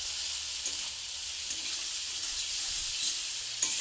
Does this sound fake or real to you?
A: real